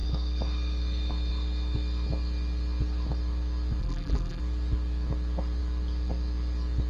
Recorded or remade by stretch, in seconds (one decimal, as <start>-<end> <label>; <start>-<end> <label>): 0.0-3.8 recorded; 3.8-4.4 remade; 4.4-6.9 recorded

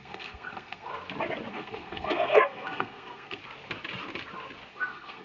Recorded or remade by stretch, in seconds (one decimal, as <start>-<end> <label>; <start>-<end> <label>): 0.0-0.9 remade; 0.9-1.5 recorded; 1.5-3.4 remade; 3.4-4.7 recorded; 4.7-5.2 remade

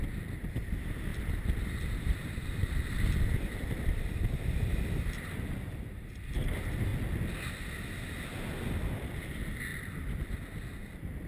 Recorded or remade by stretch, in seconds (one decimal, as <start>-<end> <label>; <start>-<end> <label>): 0.0-1.1 recorded; 1.1-6.1 remade; 6.1-11.3 recorded

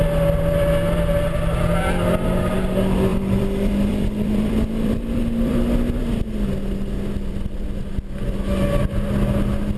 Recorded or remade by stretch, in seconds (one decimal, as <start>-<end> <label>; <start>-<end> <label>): 0.0-3.1 recorded; 3.1-5.6 remade; 5.6-9.8 recorded